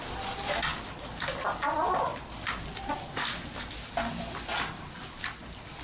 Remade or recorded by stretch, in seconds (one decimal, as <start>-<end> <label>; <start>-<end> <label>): 0.0-5.8 recorded